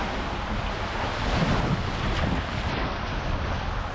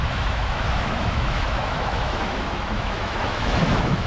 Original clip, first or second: first